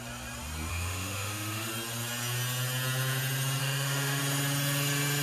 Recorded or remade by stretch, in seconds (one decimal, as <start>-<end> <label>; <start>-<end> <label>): 0.0-0.7 recorded; 0.7-1.7 remade; 1.7-3.6 recorded; 3.6-4.2 remade; 4.2-5.2 recorded